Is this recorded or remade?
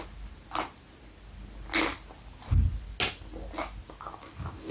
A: recorded